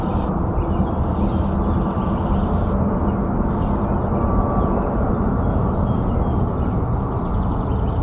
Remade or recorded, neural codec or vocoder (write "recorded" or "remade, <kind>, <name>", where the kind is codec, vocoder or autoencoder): recorded